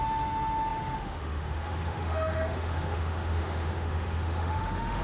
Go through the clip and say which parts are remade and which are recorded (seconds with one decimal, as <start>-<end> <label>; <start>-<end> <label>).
0.0-5.0 remade